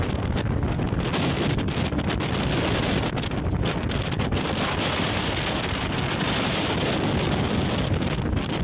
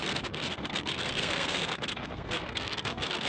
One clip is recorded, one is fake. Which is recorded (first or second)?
first